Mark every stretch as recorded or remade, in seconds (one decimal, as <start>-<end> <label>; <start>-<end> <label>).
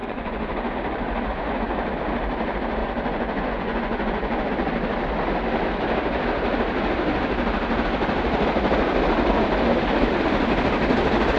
0.0-0.7 remade; 0.7-1.3 recorded; 1.3-1.8 remade; 1.8-2.8 recorded; 2.8-4.5 remade; 4.5-11.4 recorded